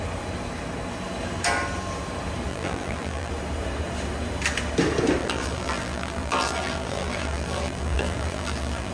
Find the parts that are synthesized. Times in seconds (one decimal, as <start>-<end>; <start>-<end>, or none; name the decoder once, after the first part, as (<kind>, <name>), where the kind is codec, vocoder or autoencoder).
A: 2.5-3.3 (vocoder, BigVGAN v2); 5.2-8.9